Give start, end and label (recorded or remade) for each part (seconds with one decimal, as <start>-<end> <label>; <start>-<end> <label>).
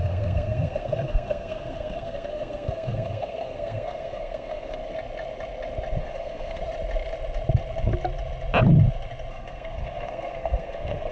0.0-4.8 remade; 4.8-6.0 recorded; 6.0-6.6 remade; 6.6-9.3 recorded; 9.3-11.1 remade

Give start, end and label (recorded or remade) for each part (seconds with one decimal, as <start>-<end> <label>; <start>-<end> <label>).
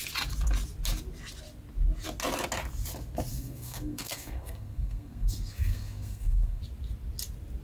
0.0-3.3 recorded; 3.3-6.6 remade; 6.6-7.6 recorded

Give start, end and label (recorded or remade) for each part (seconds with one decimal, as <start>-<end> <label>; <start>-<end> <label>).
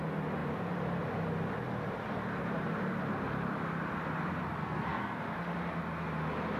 0.0-4.6 recorded; 4.6-5.2 remade; 5.2-6.6 recorded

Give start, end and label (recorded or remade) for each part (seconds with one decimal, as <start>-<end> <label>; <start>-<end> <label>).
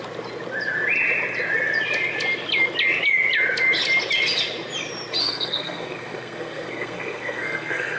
0.0-5.2 recorded; 5.2-8.0 remade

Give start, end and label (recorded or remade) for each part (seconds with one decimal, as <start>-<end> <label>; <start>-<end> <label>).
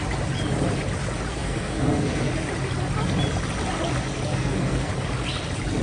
0.0-1.3 recorded; 1.3-2.3 remade; 2.3-4.3 recorded; 4.3-4.9 remade; 4.9-5.8 recorded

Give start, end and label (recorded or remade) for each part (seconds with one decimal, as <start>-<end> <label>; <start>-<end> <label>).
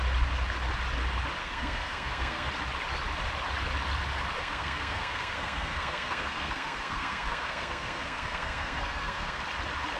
0.0-1.4 recorded; 1.4-2.5 remade; 2.5-4.4 recorded; 4.4-9.4 remade; 9.4-10.0 recorded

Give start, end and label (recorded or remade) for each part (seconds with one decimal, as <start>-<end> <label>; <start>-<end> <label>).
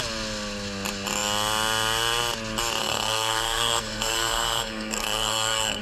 0.0-2.8 recorded; 2.8-5.8 remade